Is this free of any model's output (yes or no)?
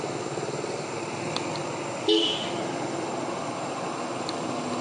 yes